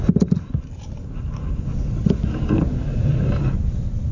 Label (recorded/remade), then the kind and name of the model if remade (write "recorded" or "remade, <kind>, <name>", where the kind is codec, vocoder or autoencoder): recorded